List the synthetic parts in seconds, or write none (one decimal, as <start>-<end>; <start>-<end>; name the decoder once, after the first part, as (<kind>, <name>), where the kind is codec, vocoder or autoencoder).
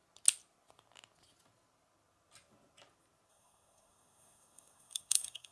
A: 3.3-5.5 (codec, SNAC)